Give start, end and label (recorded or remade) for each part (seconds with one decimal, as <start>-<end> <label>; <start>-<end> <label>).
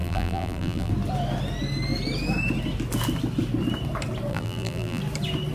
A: 0.0-0.9 remade; 0.9-4.3 recorded; 4.3-5.0 remade; 5.0-5.5 recorded